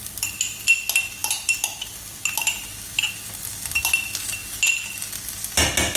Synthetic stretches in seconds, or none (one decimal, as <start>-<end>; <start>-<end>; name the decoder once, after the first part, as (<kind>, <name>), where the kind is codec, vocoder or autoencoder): none